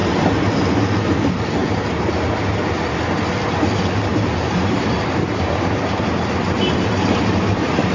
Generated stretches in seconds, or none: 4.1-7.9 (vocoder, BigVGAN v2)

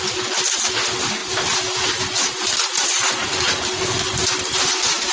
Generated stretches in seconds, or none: none

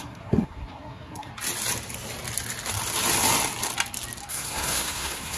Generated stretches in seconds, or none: 0.0-1.3 (codec, SNAC); 4.3-5.4

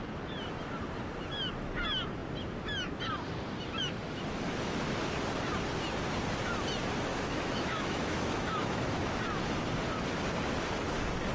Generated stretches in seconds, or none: 7.1-9.2 (autoencoder, DAC-VAE)